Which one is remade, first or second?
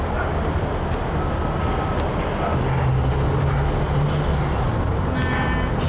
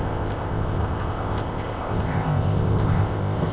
second